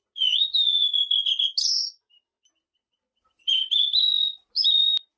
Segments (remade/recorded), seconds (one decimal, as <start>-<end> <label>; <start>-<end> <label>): 0.0-5.2 recorded